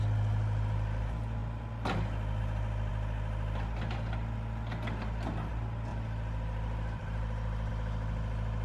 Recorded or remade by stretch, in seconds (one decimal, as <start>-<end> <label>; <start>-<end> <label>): 0.0-5.9 recorded; 5.9-7.7 remade; 7.7-8.6 recorded

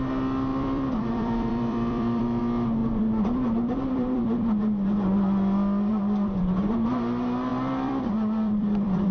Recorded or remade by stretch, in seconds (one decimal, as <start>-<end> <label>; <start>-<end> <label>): 0.0-0.5 recorded; 0.5-2.4 remade; 2.4-2.8 recorded; 2.8-4.5 remade; 4.5-5.9 recorded; 5.9-6.7 remade; 6.7-7.5 recorded; 7.5-9.1 remade